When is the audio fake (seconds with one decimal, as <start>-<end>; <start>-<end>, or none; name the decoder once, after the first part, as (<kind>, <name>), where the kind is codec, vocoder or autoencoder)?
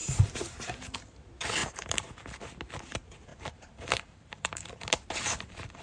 0.0-1.0 (vocoder, BigVGAN v2); 1.6-2.2; 3.3-5.8